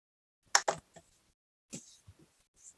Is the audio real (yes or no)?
yes